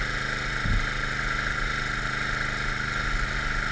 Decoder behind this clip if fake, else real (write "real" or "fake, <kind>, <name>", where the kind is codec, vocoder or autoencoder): real